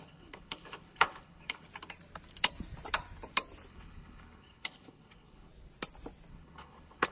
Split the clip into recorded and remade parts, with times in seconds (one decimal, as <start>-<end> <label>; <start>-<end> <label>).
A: 0.0-1.7 remade; 1.7-3.7 recorded; 3.7-5.5 remade; 5.5-6.3 recorded; 6.3-7.1 remade

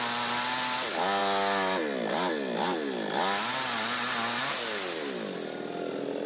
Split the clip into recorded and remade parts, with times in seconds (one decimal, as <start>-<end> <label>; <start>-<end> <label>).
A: 0.0-6.3 recorded

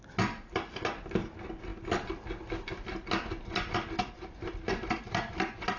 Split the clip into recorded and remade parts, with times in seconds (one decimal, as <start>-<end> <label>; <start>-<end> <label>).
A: 0.0-5.8 recorded

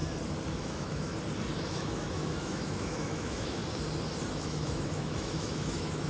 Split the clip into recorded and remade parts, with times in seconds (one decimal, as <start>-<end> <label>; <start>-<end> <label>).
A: 0.0-0.6 recorded; 0.6-1.1 remade; 1.1-1.7 recorded; 1.7-3.6 remade; 3.6-4.3 recorded; 4.3-6.1 remade